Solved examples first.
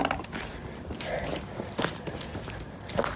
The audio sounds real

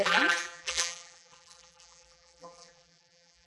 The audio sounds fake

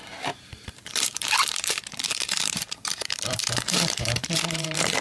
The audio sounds fake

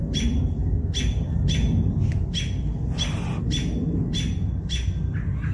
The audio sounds real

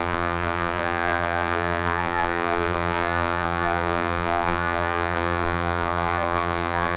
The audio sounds fake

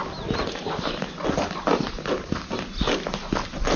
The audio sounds real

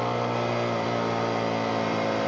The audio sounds real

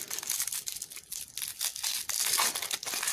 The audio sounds fake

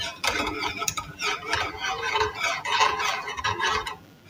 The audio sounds fake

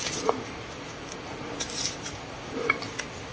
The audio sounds real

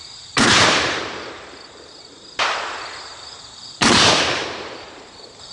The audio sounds fake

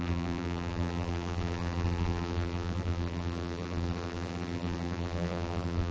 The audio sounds fake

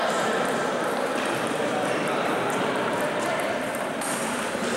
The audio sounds fake